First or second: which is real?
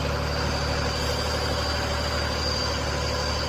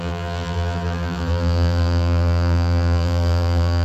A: first